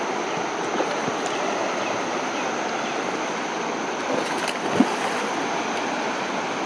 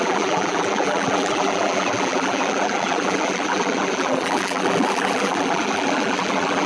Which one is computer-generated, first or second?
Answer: second